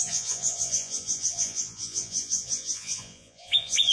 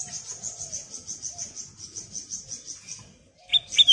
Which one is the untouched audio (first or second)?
second